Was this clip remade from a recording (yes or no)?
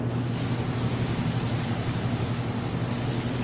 no